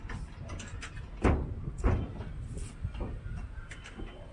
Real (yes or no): yes